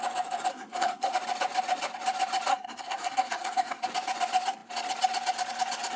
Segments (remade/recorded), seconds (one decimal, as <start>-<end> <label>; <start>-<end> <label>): 0.0-0.5 recorded; 0.5-1.1 remade; 1.1-2.5 recorded; 2.5-3.8 remade; 3.8-6.0 recorded